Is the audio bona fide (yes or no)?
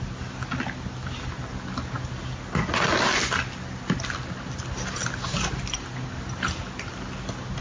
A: yes